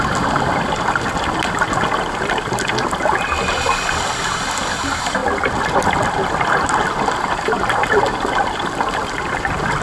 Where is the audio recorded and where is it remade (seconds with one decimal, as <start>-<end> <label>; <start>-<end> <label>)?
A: 0.0-9.8 recorded

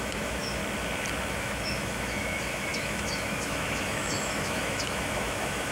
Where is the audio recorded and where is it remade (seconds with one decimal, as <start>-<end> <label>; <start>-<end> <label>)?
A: 0.0-0.6 remade; 0.6-1.3 recorded; 1.3-5.7 remade

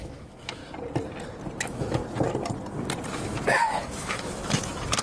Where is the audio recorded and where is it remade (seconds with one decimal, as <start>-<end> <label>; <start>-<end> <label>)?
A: 0.0-0.6 remade; 0.6-1.6 recorded; 1.6-2.0 remade; 2.0-3.1 recorded; 3.1-5.0 remade

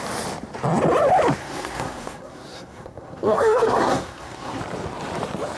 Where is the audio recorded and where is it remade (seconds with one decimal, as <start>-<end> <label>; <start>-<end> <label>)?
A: 0.0-1.4 recorded; 1.4-4.6 remade; 4.6-5.6 recorded

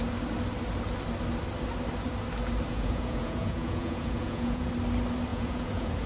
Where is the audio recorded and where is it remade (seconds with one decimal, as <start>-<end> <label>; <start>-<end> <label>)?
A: 0.0-2.7 recorded; 2.7-4.7 remade; 4.7-5.3 recorded; 5.3-6.1 remade

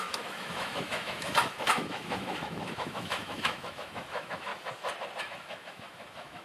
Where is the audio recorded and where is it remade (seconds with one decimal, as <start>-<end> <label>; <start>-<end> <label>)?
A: 0.0-4.5 remade; 4.5-5.2 recorded; 5.2-6.4 remade